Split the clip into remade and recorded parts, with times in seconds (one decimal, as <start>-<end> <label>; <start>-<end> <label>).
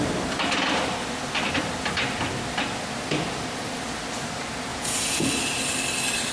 0.0-4.7 recorded; 4.7-5.3 remade; 5.3-6.3 recorded